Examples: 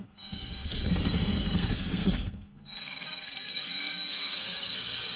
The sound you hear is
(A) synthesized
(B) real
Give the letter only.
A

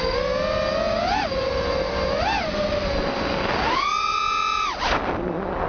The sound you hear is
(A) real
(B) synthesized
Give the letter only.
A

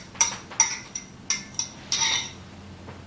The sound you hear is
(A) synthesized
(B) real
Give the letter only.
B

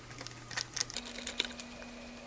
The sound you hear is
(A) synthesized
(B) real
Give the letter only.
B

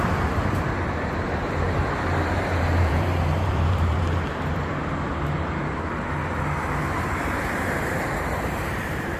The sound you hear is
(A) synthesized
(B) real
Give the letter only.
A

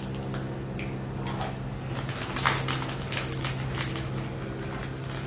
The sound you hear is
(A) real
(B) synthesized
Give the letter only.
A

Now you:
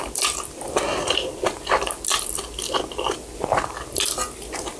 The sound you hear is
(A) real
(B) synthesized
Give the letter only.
A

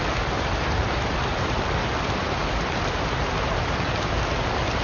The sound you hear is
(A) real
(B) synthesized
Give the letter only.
A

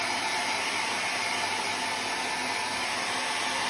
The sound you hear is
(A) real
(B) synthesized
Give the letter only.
A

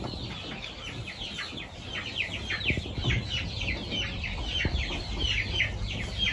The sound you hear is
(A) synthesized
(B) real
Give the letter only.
B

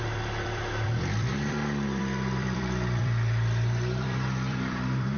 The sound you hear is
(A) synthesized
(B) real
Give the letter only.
A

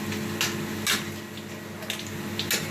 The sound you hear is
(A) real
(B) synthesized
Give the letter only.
A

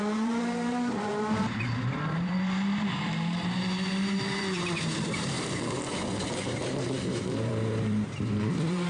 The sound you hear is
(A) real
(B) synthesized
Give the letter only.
B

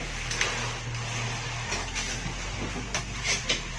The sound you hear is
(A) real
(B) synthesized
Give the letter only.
A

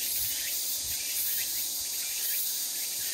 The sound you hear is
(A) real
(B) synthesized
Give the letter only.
B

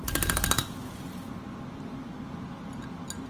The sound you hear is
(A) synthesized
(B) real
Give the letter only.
B